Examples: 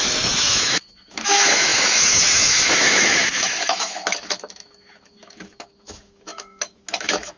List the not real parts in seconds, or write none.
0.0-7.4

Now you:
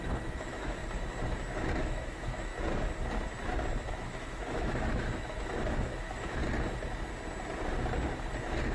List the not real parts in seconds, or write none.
0.0-0.8; 1.8-2.5; 3.9-6.4

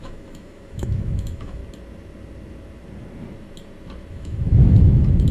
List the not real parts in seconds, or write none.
0.0-1.6; 4.1-5.3

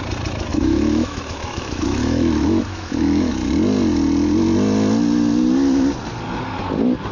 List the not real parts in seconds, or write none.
0.5-3.3

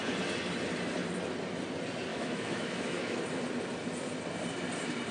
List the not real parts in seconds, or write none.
2.1-3.2

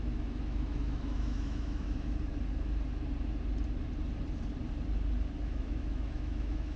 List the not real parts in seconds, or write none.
0.0-2.3; 5.4-6.8

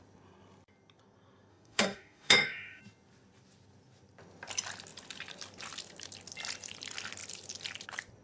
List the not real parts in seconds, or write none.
1.5-2.8